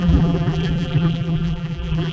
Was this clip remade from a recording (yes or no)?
yes